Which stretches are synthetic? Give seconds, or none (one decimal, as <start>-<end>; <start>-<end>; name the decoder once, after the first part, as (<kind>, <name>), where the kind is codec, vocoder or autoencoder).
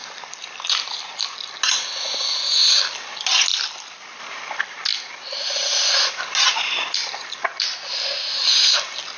0.0-1.1 (vocoder, BigVGAN v2); 3.5-4.2; 4.9-6.3